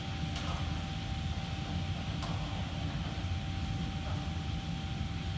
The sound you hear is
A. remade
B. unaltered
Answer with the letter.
B